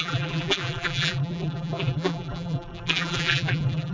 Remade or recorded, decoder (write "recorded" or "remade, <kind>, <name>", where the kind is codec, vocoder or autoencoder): remade, vocoder, BigVGAN v2